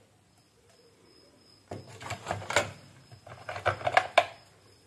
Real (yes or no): yes